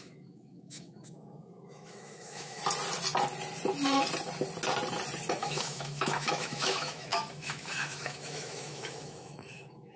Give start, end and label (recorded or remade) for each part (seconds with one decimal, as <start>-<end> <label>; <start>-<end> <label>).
0.0-2.6 remade; 2.6-5.4 recorded; 5.4-10.0 remade